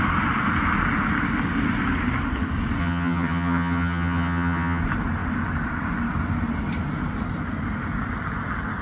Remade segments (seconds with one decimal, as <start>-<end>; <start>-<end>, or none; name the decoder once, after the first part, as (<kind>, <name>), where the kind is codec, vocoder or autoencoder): 2.8-4.8 (vocoder, HiFi-GAN)